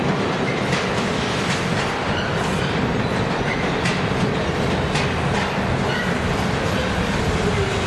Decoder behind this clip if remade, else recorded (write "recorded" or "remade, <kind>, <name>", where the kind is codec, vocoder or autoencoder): recorded